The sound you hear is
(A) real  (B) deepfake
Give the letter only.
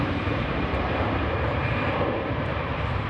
B